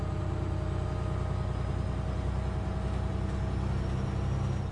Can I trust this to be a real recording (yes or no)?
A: yes